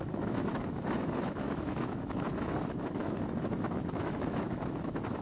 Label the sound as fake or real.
fake